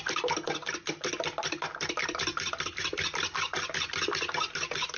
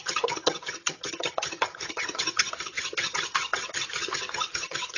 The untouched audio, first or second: first